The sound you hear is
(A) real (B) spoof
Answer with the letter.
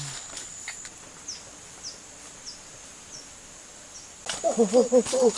A